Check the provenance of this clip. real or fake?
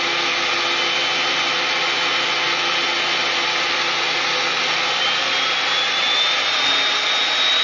real